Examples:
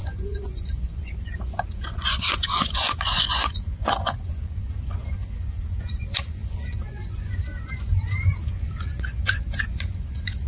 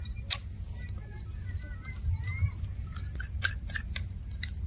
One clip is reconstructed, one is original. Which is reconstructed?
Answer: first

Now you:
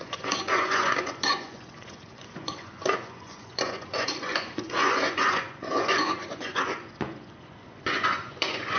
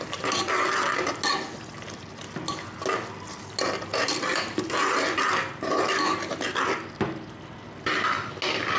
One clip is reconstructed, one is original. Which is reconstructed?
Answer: first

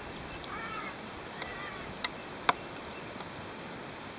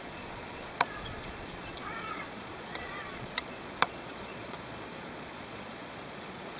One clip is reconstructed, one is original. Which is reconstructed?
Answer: second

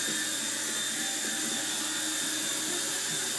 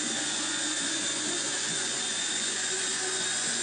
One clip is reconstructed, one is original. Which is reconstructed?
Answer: second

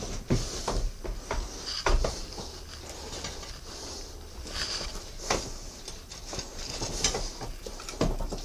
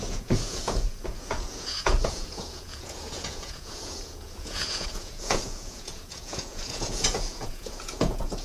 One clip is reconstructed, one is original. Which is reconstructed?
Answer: second